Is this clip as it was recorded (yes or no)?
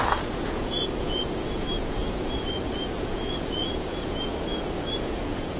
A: no